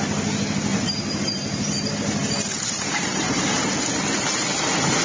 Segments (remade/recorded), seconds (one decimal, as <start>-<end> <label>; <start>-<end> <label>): 0.0-0.7 recorded; 0.7-3.7 remade; 3.7-5.0 recorded